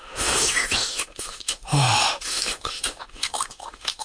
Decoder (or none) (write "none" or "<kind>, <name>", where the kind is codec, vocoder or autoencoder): autoencoder, DAC-VAE